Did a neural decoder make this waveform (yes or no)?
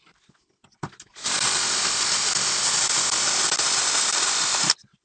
no